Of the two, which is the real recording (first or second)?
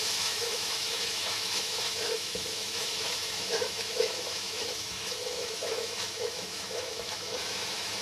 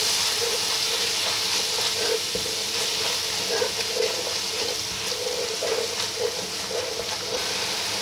second